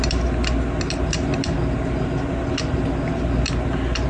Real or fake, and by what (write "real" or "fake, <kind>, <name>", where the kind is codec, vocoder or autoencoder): real